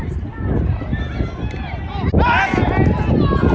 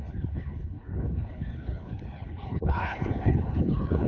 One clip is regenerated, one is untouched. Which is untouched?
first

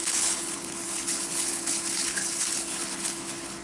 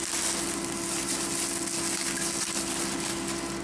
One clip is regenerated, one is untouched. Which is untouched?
second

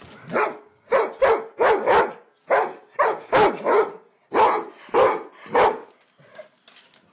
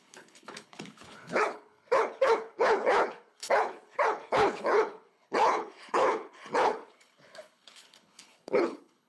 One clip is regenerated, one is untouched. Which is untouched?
first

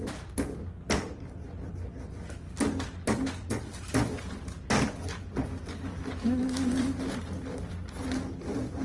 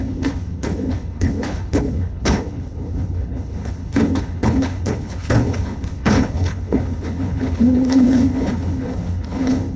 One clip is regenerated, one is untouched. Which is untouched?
first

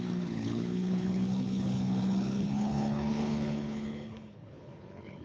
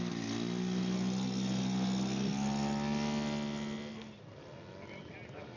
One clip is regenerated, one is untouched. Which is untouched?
second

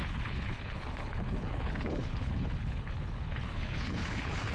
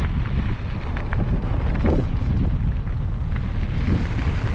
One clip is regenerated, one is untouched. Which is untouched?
second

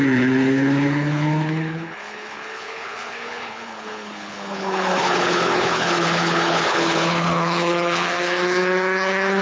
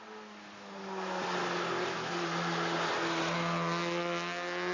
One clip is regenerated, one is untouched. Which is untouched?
second